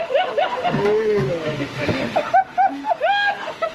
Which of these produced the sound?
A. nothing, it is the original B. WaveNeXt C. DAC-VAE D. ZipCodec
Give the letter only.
C